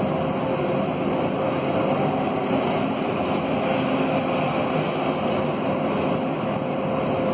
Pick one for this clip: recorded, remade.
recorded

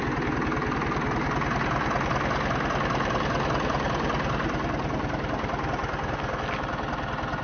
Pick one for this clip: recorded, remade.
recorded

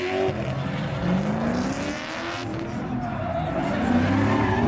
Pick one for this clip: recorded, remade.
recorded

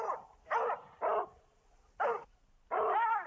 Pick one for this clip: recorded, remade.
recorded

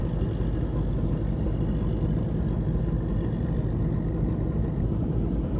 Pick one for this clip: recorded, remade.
recorded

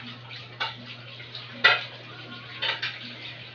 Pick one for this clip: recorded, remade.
recorded